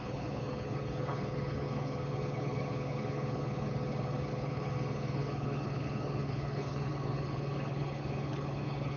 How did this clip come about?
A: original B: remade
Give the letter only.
B